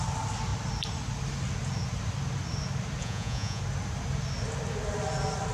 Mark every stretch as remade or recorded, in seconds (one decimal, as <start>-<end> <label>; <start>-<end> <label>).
0.0-3.0 recorded; 3.0-3.6 remade; 3.6-5.5 recorded